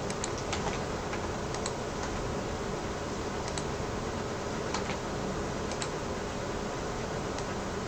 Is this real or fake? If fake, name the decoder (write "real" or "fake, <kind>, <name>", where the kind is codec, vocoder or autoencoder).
real